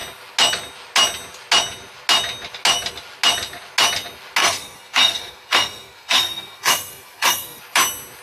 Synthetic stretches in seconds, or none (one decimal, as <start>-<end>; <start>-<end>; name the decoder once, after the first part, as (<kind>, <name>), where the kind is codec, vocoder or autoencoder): 4.4-7.6 (codec, SNAC)